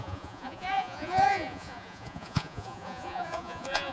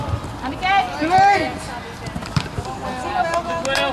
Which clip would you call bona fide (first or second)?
second